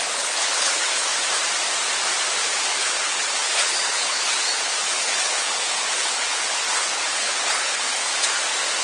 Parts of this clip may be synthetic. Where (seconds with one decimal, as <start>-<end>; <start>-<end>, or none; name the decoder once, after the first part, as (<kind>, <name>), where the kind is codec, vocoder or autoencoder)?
0.0-1.1 (codec, HILCodec); 2.3-8.1